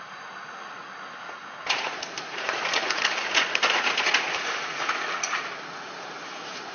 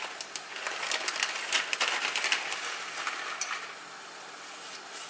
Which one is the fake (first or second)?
first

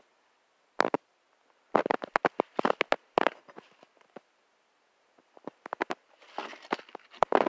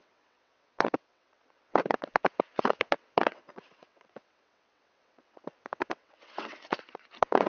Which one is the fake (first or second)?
second